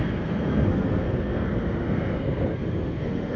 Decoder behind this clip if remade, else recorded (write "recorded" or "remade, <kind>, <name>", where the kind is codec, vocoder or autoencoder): remade, codec, SNAC